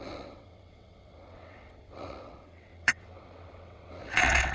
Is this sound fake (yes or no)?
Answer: yes